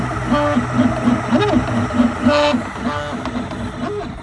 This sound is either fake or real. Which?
real